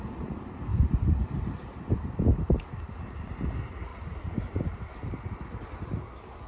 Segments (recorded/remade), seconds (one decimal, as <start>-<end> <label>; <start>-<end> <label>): 0.0-6.5 recorded